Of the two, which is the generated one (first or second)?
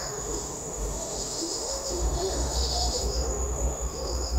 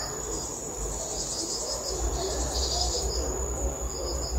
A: first